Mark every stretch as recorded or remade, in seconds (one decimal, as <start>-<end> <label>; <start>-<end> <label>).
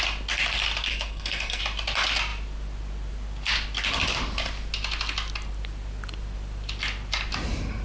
0.0-0.9 recorded; 0.9-1.6 remade; 1.6-7.8 recorded